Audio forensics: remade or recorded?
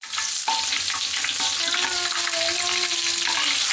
recorded